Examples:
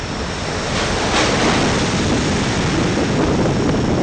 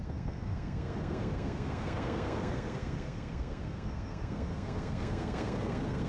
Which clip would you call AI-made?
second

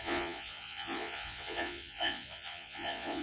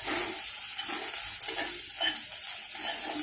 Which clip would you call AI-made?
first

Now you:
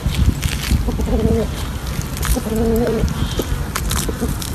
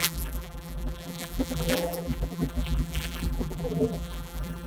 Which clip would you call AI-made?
second